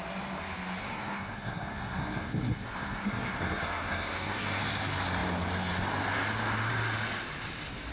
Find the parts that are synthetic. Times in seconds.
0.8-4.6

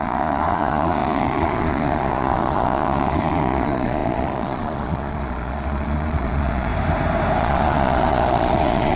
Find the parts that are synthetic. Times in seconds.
0.0-6.7; 7.4-9.0

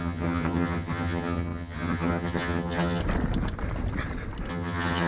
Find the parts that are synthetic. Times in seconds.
0.0-3.0; 4.5-5.1

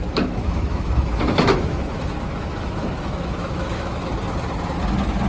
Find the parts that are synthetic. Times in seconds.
0.0-4.1